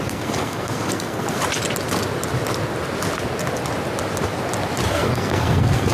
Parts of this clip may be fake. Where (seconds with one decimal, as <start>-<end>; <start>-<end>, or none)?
0.0-1.4; 4.9-5.9